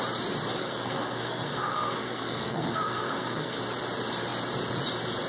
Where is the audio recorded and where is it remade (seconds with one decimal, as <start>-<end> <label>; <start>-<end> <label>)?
0.0-0.6 recorded; 0.6-3.6 remade; 3.6-5.3 recorded